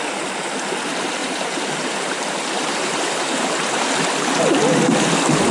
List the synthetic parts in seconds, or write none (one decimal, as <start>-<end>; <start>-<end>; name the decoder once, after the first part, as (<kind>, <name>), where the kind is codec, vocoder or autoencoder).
1.2-4.3 (vocoder, BigVGAN v2)